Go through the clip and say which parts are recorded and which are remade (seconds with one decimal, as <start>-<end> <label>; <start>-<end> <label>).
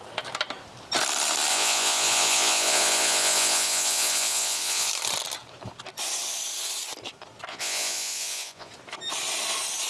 0.0-1.5 recorded; 1.5-4.9 remade; 4.9-7.5 recorded; 7.5-8.7 remade; 8.7-9.9 recorded